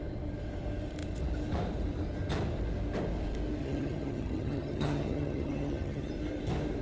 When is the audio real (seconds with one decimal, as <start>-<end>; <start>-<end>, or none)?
0.0-3.6; 6.1-6.8